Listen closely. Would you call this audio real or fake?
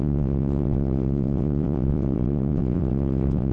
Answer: fake